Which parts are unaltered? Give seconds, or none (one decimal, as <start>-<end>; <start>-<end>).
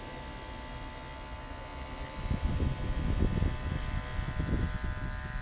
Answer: 0.0-4.1; 4.6-5.4